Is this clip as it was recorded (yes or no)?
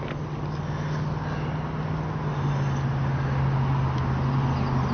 yes